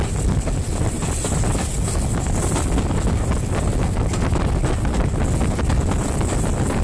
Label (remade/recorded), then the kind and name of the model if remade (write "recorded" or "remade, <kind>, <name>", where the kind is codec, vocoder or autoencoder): recorded